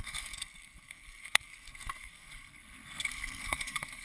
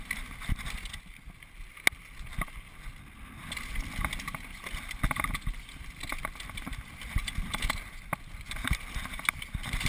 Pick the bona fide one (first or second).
second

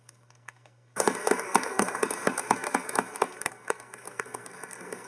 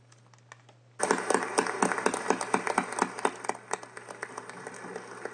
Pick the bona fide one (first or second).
second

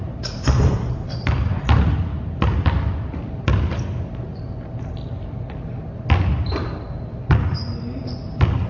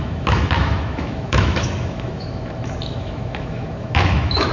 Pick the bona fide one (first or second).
first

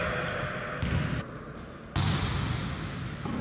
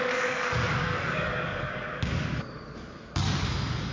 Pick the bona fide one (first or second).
first